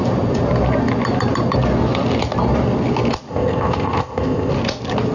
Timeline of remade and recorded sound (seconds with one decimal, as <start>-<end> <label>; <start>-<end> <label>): 0.0-3.3 recorded; 3.3-4.5 remade; 4.5-5.1 recorded